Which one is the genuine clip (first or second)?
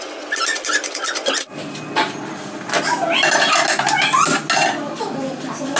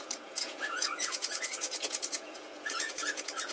first